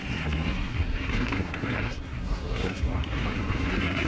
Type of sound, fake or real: fake